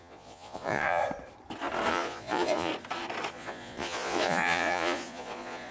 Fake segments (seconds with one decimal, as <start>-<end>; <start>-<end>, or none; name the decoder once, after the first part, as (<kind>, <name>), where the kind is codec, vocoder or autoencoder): 0.0-1.0 (vocoder, Vocos); 1.9-2.7; 3.3-5.7